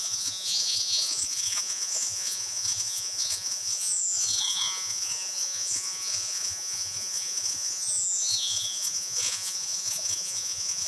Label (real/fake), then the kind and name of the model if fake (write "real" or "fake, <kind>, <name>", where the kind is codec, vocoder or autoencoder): fake, vocoder, Vocos